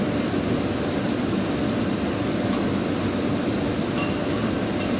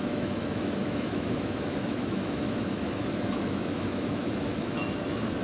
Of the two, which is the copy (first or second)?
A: second